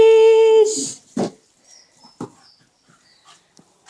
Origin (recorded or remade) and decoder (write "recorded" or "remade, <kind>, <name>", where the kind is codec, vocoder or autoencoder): recorded